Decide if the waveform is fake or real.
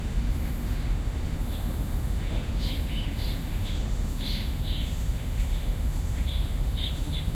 fake